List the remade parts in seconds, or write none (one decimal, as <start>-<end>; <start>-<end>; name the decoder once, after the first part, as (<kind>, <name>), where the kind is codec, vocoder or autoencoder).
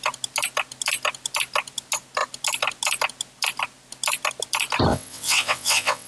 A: 4.9-6.1 (vocoder, WaveNeXt)